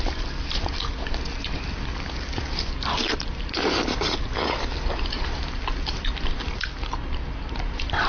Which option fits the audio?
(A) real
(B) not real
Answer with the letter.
A